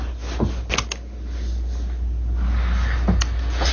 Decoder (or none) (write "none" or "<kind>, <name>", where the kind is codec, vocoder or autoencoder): none